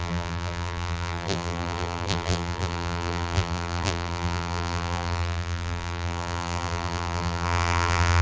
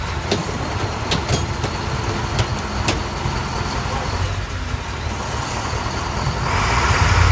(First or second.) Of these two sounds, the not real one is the first